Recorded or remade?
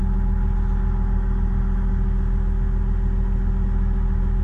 recorded